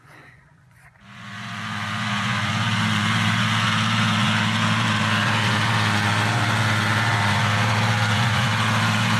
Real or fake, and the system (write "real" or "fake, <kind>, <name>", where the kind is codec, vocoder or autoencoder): fake, vocoder, Vocos